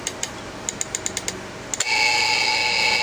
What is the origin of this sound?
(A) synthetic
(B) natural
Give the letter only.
B